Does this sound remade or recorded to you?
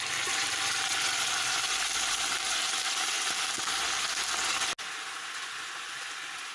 recorded